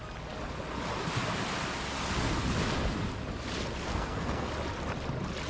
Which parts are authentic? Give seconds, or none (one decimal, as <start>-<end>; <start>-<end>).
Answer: 0.0-3.9; 4.5-5.5